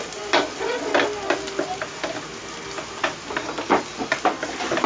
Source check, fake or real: real